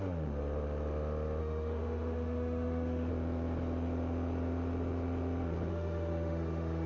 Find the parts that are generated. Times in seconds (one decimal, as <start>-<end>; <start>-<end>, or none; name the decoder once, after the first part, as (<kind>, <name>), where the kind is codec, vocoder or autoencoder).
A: 1.4-3.1 (autoencoder, DAC-VAE); 5.7-6.9